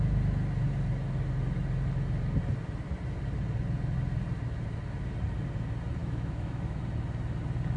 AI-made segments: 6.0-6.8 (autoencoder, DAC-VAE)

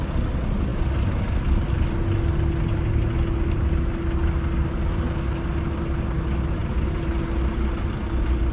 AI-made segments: none

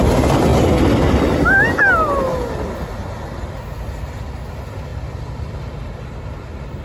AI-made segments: 0.5-1.4 (vocoder, BigVGAN v2); 2.3-4.5; 4.9-5.5

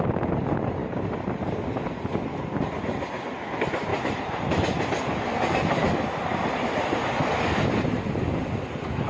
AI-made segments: none

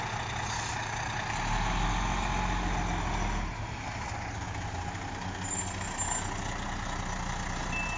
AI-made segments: none

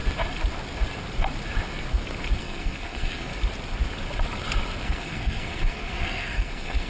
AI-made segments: 2.4-3.3 (codec, SNAC); 4.8-6.9